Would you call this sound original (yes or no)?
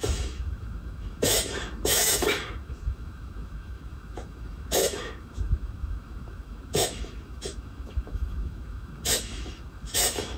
no